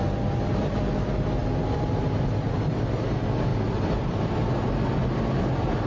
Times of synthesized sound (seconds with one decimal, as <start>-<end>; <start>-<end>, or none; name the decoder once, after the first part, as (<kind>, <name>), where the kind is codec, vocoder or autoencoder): 1.4-2.7 (vocoder, BigVGAN v2); 3.5-4.4